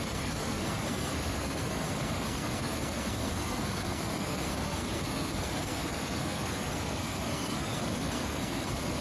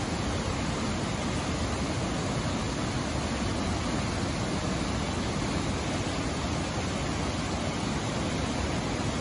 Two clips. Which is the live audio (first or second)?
second